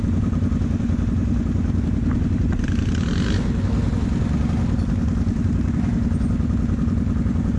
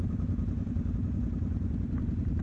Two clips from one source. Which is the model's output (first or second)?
second